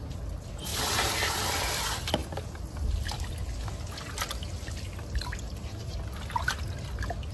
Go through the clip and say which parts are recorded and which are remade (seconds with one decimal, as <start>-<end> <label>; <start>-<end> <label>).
0.0-7.3 recorded